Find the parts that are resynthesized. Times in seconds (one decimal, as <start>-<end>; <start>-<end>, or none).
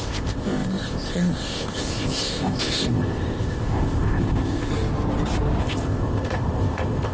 0.0-4.7; 5.6-7.1